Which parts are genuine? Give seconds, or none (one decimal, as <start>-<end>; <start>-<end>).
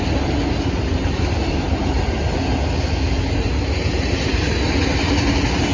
0.0-5.7